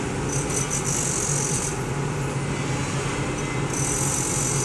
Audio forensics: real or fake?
real